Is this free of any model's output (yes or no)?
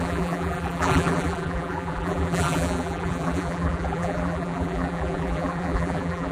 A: no